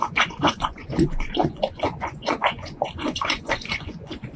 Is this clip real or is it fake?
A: fake